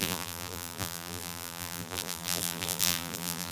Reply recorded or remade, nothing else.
remade